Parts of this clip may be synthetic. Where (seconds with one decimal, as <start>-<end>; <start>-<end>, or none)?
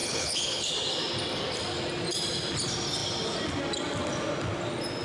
0.0-0.7